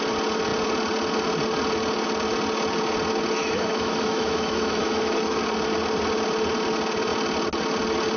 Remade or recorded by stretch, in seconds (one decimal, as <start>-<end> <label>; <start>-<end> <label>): 0.0-3.4 recorded; 3.4-5.4 remade; 5.4-8.2 recorded